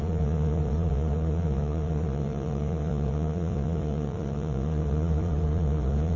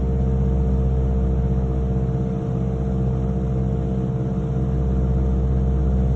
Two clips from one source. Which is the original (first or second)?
second